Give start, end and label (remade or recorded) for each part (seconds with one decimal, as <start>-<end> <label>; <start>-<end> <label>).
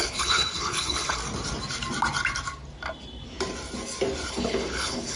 0.0-1.2 remade; 1.2-4.3 recorded; 4.3-5.2 remade